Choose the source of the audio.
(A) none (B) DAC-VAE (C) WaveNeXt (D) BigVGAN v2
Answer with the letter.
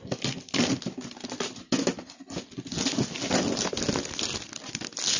A